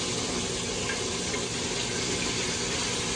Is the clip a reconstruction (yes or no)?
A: no